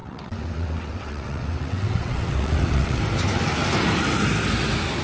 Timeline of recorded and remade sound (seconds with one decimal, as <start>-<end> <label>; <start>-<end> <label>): 0.0-3.0 remade; 3.0-5.0 recorded